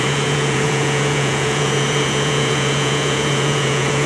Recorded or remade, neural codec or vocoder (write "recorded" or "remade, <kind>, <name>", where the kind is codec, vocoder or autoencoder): remade, vocoder, Vocos